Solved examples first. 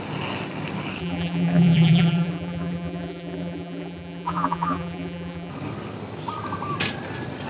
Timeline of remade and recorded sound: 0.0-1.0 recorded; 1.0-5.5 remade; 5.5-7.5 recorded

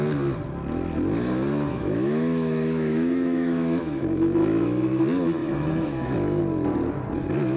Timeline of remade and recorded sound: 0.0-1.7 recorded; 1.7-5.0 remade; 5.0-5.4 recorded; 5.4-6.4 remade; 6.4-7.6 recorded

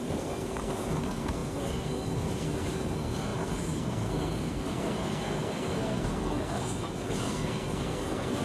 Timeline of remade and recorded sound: 0.0-8.4 remade

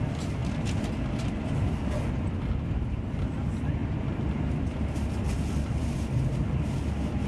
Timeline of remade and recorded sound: 0.0-7.3 recorded

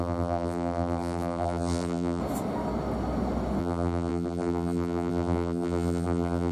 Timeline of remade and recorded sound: 0.0-2.2 remade; 2.2-3.6 recorded; 3.6-6.5 remade

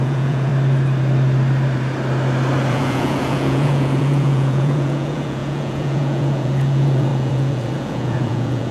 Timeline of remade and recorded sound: 0.0-0.5 remade; 0.5-2.7 recorded; 2.7-8.7 remade

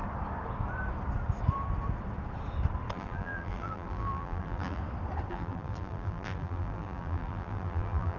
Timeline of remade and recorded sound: 0.0-2.9 recorded; 2.9-4.8 remade; 4.8-5.3 recorded; 5.3-8.2 remade

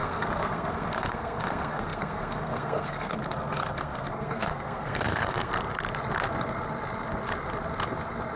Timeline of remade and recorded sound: 0.0-5.5 remade; 5.5-8.4 recorded